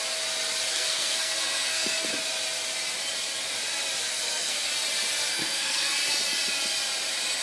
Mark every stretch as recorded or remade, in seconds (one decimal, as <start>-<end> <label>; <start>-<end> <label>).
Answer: 0.0-0.7 recorded; 0.7-2.1 remade; 2.1-4.1 recorded; 4.1-4.7 remade; 4.7-5.3 recorded; 5.3-5.9 remade; 5.9-7.4 recorded